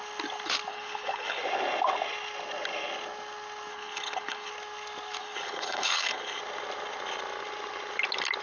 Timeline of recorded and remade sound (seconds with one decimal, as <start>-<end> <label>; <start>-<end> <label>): 0.0-0.7 recorded; 0.7-1.4 remade; 1.4-3.7 recorded; 3.7-4.5 remade; 4.5-5.2 recorded; 5.2-6.4 remade; 6.4-8.4 recorded